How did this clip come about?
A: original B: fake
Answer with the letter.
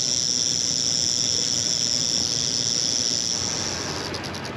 A